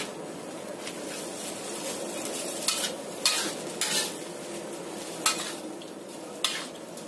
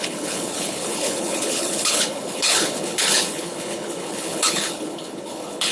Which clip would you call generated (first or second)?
second